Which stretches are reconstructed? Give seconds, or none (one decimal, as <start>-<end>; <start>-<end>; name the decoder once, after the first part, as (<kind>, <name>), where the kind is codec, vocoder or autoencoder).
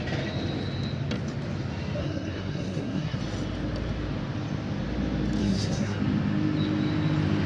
2.0-3.2 (codec, SNAC); 5.4-6.0